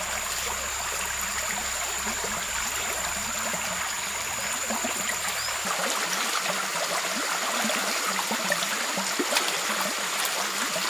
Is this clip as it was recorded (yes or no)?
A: yes